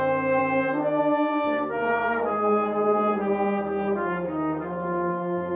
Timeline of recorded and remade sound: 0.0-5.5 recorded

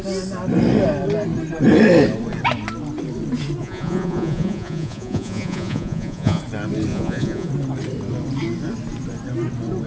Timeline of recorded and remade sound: 0.0-3.6 recorded; 3.6-6.4 remade; 6.4-6.9 recorded; 6.9-7.5 remade; 7.5-9.9 recorded